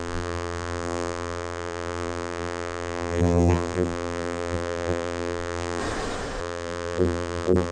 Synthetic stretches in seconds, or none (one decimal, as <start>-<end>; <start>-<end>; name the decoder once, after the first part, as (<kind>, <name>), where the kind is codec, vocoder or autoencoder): 0.0-5.8 (vocoder, BigVGAN v2); 6.4-7.7